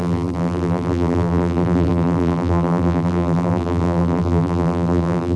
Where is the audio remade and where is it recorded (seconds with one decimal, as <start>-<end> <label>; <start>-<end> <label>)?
0.0-5.4 remade